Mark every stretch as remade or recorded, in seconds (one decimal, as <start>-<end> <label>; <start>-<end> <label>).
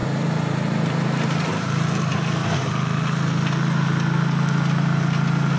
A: 0.0-2.1 remade; 2.1-5.6 recorded